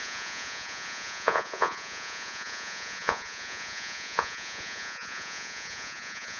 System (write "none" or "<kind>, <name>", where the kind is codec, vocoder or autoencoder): vocoder, Vocos